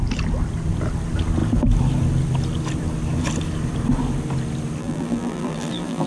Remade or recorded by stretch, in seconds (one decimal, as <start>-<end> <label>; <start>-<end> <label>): 0.0-4.8 recorded; 4.8-6.1 remade